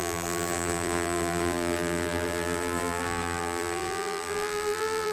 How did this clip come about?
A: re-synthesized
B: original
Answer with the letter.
A